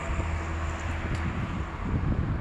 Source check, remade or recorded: recorded